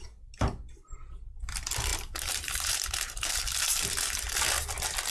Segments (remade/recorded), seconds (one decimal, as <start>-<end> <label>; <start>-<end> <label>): 0.0-1.9 recorded; 1.9-3.9 remade; 3.9-5.1 recorded